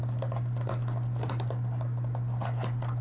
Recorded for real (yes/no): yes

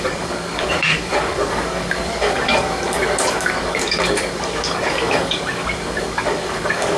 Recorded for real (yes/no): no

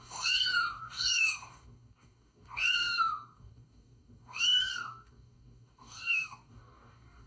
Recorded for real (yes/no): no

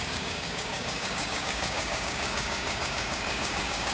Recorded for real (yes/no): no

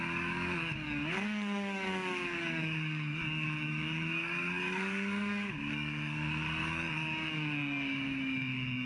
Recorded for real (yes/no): no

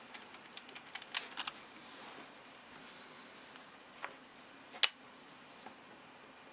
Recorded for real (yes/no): yes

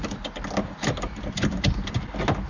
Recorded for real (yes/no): yes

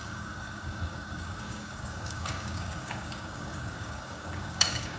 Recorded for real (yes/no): no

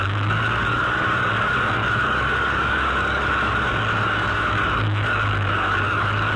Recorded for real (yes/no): no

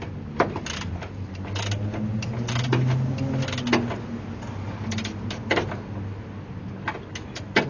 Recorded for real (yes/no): yes